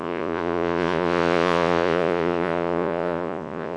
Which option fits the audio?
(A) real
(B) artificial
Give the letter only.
B